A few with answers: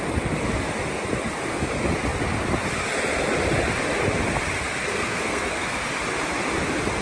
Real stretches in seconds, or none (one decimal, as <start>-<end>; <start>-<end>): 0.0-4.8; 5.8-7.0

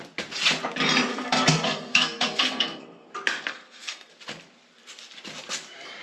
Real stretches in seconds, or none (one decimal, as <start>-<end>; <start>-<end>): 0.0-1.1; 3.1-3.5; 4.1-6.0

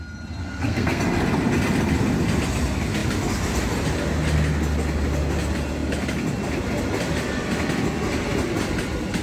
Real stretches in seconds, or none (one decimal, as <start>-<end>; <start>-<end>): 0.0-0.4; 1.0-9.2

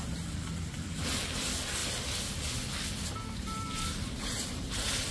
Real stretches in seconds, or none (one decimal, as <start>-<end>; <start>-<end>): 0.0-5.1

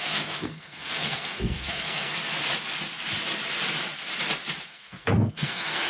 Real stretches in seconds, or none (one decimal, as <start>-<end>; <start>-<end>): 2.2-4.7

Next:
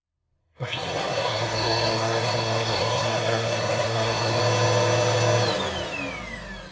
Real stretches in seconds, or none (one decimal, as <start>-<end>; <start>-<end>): 0.0-0.4; 4.4-6.7

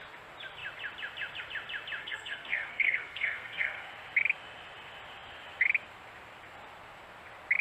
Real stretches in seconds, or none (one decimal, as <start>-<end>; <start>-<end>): 0.0-2.0; 3.9-7.6